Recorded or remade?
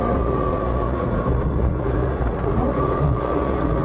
remade